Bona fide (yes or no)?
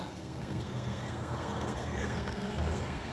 no